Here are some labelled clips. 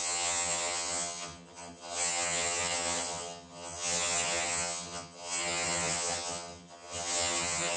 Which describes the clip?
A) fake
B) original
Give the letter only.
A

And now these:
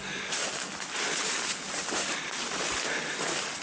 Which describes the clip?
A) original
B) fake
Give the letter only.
A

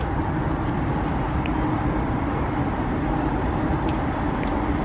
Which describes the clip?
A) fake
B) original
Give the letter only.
B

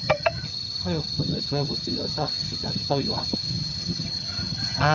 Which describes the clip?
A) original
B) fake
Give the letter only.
B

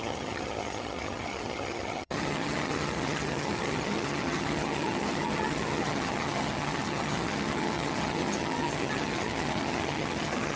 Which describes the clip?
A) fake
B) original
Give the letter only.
A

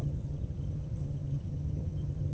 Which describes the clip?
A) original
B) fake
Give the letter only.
B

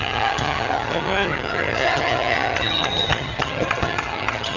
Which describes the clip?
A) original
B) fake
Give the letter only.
B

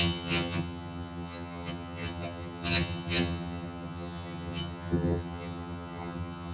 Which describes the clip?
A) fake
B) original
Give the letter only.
A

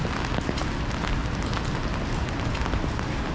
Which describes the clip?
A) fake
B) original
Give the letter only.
B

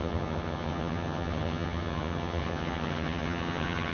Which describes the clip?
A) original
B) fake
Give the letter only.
B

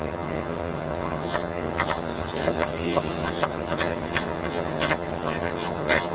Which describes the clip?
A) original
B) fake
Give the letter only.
B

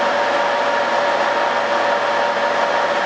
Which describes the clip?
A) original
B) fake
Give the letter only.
A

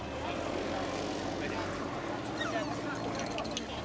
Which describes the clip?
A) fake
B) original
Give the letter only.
B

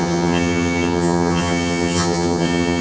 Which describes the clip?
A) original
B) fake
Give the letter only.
B